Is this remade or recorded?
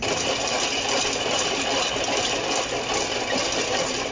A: recorded